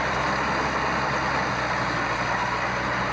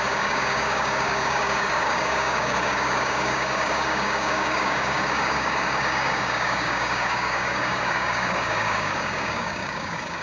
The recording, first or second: first